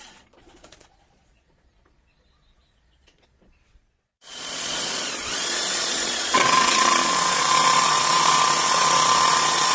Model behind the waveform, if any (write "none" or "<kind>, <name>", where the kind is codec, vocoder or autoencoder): vocoder, Vocos